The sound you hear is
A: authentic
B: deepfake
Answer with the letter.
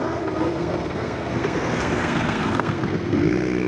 B